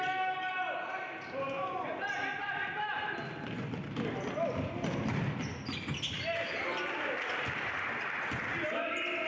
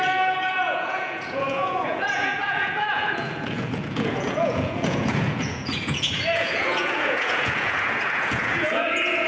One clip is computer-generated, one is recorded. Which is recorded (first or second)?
first